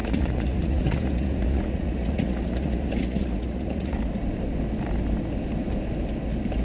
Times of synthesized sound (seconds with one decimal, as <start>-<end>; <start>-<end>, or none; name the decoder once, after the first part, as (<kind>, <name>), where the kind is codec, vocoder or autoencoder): 0.0-4.0 (vocoder, Vocos)